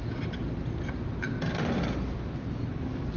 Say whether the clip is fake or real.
real